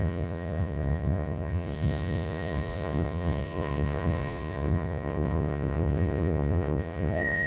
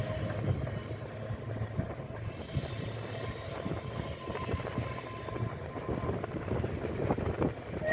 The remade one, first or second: first